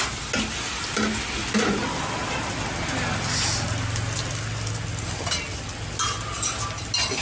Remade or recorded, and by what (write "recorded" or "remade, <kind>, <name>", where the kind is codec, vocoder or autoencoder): recorded